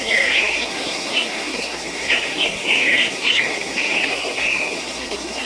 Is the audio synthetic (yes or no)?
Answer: yes